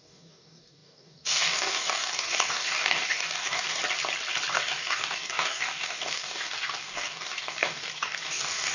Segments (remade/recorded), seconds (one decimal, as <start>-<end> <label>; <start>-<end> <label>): 0.0-3.8 remade; 3.8-4.5 recorded; 4.5-8.7 remade